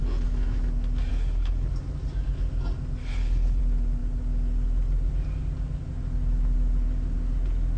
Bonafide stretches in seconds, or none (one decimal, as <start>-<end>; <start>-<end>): 0.0-1.1; 1.7-3.0; 3.6-7.8